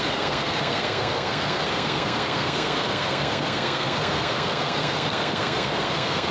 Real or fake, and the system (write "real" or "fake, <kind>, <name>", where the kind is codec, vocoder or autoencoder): fake, codec, SNAC